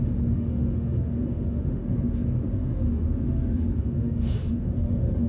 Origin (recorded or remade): remade